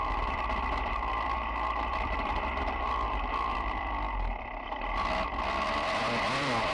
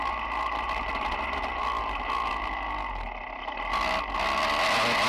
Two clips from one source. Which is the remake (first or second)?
first